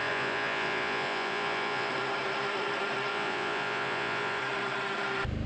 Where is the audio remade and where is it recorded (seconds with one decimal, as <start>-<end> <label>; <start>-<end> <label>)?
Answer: 0.0-1.9 remade; 1.9-3.1 recorded; 3.1-4.4 remade; 4.4-5.5 recorded